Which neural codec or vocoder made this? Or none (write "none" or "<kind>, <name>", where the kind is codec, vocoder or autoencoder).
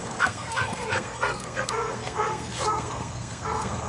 codec, SNAC